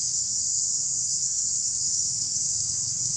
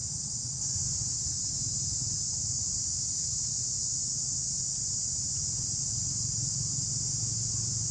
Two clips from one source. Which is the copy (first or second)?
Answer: first